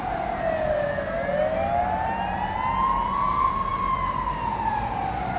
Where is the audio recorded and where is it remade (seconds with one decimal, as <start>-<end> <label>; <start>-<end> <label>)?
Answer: 0.0-5.4 recorded